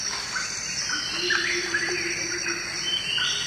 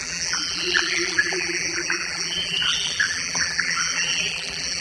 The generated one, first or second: second